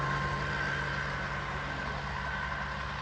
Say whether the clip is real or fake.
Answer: real